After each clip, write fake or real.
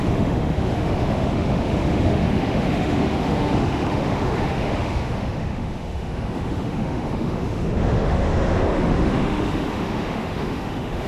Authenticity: fake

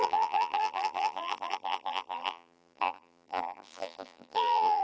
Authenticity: fake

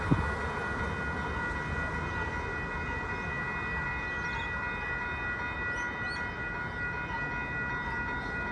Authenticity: real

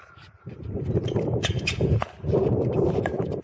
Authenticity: fake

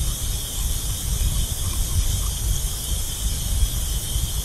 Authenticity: fake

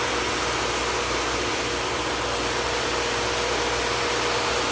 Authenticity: real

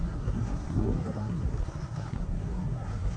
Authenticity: fake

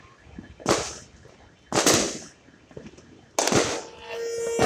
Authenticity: real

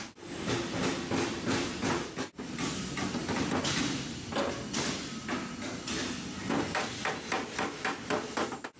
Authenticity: real